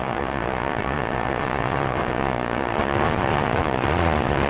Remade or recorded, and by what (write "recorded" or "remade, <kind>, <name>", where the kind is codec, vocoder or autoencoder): remade, vocoder, Vocos